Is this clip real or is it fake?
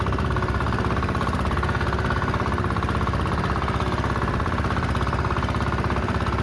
real